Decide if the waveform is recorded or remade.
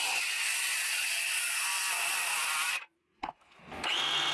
recorded